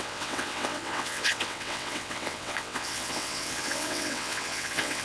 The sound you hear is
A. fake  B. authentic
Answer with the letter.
A